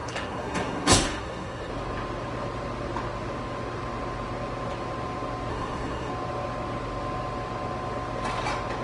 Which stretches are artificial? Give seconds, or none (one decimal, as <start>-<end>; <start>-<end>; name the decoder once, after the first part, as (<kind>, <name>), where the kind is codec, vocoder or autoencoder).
0.0-1.7 (codec, SNAC); 5.5-6.1